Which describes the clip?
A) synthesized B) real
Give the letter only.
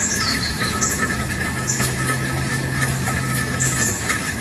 A